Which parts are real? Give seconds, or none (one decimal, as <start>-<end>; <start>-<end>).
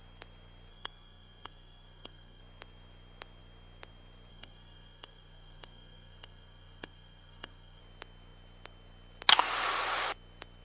0.0-0.7; 2.4-4.3; 7.8-10.6